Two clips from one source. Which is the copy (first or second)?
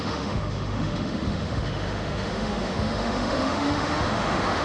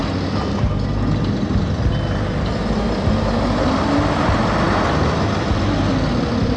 first